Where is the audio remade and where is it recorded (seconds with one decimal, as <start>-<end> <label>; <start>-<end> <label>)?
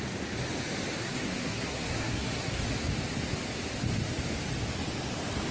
0.0-1.0 recorded; 1.0-2.6 remade; 2.6-5.5 recorded